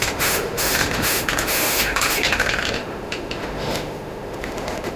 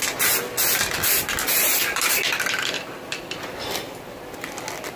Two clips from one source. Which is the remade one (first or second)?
first